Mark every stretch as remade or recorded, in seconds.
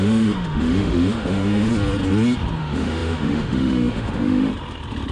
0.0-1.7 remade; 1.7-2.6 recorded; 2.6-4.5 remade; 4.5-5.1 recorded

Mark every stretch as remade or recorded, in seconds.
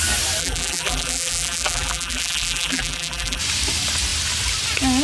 0.0-0.4 recorded; 0.4-3.4 remade; 3.4-5.0 recorded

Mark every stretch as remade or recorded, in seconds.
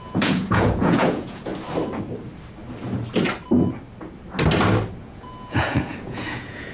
0.0-1.5 remade; 1.5-5.0 recorded; 5.0-6.7 remade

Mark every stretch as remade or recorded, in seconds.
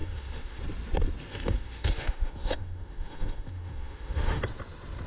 0.0-0.6 remade; 0.6-1.3 recorded; 1.3-4.4 remade; 4.4-5.1 recorded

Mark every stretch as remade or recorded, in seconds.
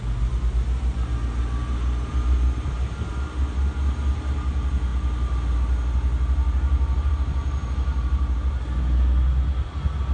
0.0-10.1 recorded